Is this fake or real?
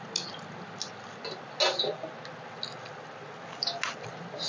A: real